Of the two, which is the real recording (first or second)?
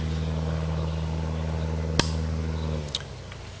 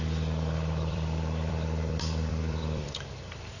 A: first